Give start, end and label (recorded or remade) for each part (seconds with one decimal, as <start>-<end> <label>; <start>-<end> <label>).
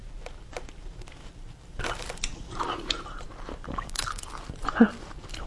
0.0-1.3 recorded; 1.3-5.5 remade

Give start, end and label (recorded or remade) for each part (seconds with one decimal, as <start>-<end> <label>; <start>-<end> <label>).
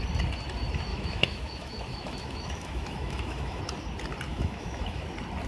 0.0-0.9 recorded; 0.9-3.6 remade; 3.6-4.3 recorded; 4.3-5.0 remade; 5.0-5.5 recorded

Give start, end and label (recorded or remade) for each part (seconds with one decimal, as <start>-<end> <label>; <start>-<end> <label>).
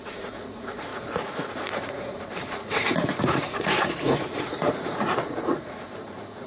0.0-6.5 remade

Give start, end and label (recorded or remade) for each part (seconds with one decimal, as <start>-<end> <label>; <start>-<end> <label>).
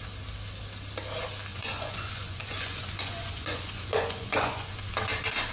0.0-1.5 recorded; 1.5-4.8 remade; 4.8-5.5 recorded